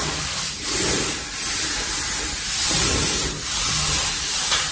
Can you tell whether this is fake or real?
real